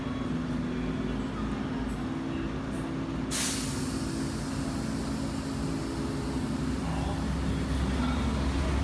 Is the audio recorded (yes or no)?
yes